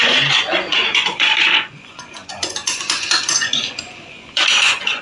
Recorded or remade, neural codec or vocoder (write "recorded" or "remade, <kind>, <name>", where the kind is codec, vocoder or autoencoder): remade, vocoder, Vocos